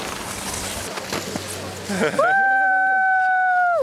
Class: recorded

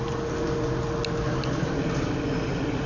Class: recorded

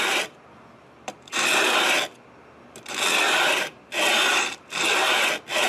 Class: remade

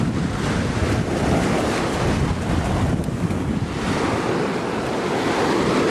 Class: recorded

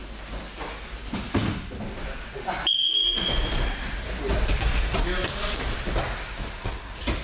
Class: recorded